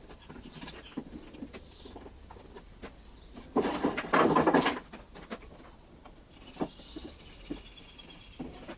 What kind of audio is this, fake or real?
real